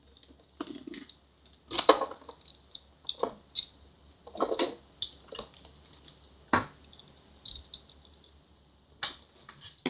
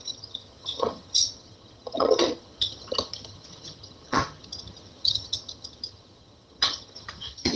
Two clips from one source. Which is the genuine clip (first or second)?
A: first